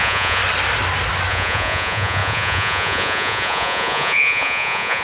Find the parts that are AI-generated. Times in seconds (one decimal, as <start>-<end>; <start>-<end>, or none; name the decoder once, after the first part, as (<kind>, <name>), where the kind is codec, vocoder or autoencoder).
0.0-0.4 (vocoder, Vocos); 1.3-5.0